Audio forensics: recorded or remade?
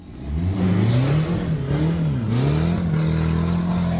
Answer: recorded